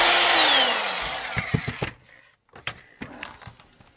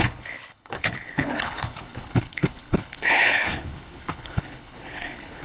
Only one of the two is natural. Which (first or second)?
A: first